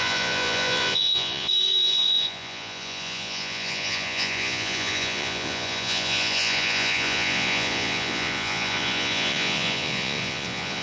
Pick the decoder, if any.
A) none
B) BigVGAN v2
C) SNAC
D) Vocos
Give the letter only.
D